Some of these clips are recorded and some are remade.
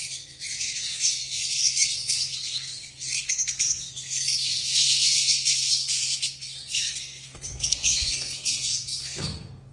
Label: remade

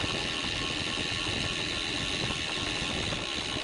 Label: recorded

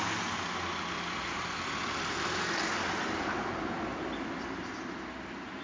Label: recorded